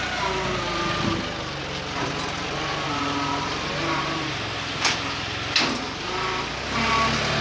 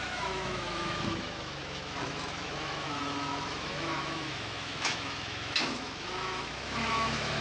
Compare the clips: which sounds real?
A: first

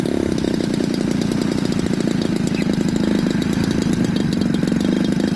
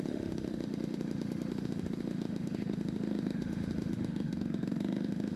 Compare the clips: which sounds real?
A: first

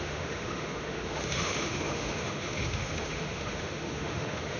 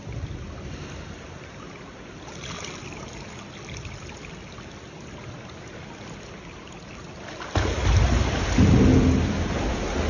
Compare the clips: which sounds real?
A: second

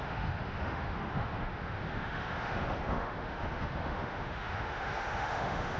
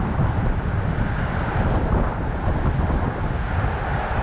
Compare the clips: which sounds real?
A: second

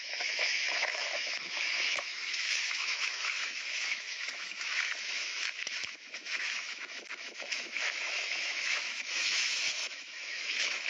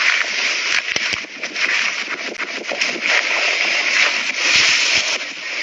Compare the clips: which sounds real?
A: second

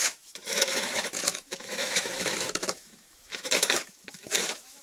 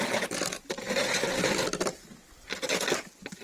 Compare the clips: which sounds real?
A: second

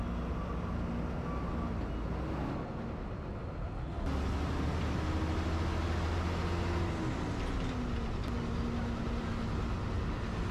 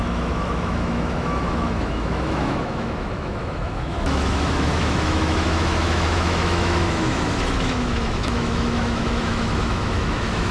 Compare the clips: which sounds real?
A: first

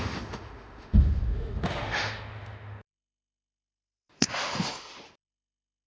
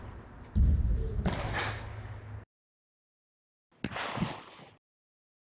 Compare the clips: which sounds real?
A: second